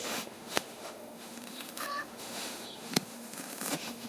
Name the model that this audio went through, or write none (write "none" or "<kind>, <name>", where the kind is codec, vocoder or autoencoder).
autoencoder, DAC-VAE